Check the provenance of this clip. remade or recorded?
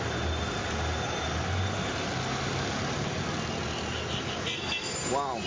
recorded